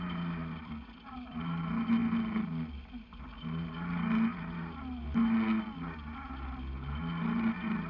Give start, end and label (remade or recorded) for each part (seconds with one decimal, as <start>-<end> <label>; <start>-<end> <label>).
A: 0.0-0.4 recorded; 0.4-1.6 remade; 1.6-7.9 recorded